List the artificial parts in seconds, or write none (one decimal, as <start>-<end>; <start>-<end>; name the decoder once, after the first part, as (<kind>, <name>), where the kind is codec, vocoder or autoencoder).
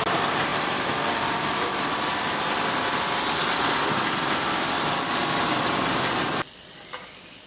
none